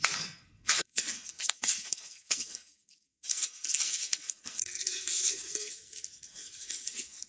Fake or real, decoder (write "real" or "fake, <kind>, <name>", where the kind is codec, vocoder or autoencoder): fake, codec, SNAC